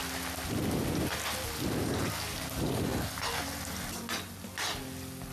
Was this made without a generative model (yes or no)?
yes